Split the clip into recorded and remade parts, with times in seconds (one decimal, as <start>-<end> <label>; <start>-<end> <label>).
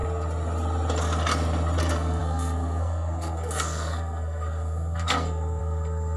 0.0-1.8 recorded; 1.8-6.2 remade